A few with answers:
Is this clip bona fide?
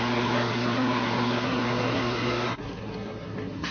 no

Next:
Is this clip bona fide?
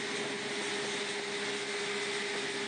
yes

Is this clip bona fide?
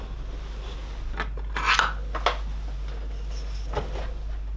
yes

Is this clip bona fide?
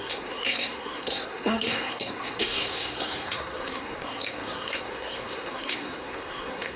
no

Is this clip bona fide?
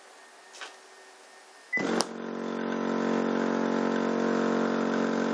yes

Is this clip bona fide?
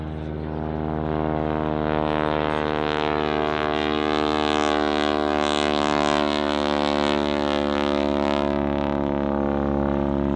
yes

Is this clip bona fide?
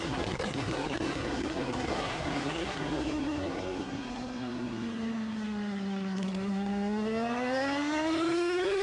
no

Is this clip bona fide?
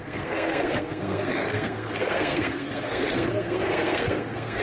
no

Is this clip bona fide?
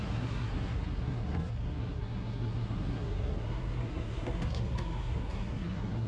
no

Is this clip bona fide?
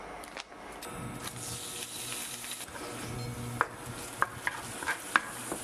yes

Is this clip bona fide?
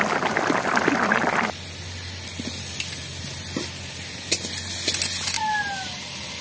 yes